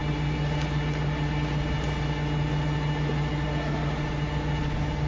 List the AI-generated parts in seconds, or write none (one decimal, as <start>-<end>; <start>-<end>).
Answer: none